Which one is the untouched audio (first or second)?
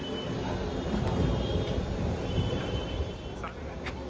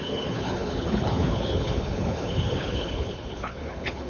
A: first